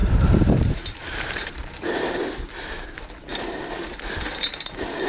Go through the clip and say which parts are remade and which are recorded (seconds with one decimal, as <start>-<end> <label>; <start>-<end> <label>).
0.0-2.2 remade; 2.2-5.1 recorded